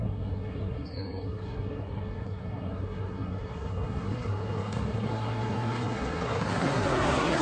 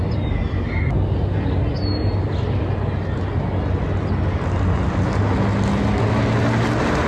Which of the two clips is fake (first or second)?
first